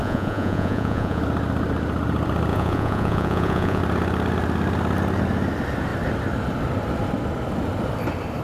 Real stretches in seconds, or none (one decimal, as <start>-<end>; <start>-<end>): 1.2-2.5; 3.8-8.4